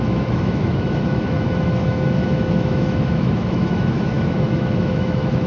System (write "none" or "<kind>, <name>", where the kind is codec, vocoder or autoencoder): autoencoder, DAC-VAE